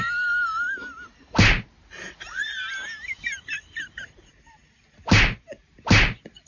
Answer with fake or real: real